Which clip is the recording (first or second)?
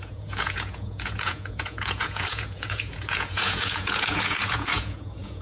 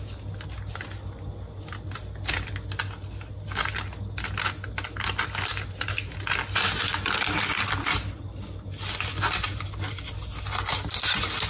second